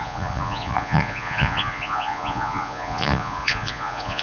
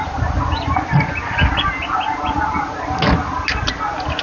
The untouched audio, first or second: second